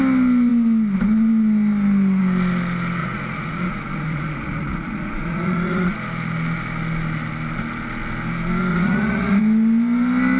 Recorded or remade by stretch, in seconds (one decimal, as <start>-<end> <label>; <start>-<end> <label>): 0.0-3.0 recorded; 3.0-6.0 remade; 6.0-8.7 recorded; 8.7-9.4 remade; 9.4-10.4 recorded